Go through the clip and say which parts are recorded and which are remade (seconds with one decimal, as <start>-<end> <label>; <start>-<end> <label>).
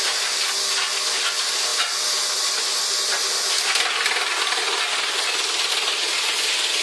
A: 0.0-6.8 recorded